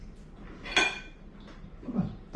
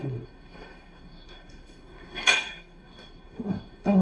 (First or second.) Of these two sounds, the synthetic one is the second